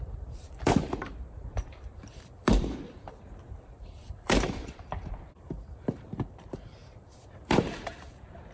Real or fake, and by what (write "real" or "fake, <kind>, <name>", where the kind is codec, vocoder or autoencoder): fake, vocoder, BigVGAN v2